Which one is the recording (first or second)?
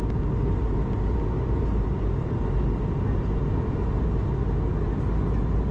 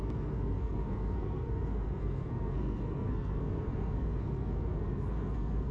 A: first